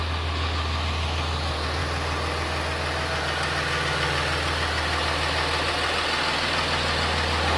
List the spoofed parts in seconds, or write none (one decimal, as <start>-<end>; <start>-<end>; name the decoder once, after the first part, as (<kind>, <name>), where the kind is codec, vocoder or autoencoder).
none